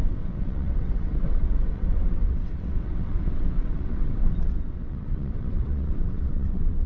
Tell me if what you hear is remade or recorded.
remade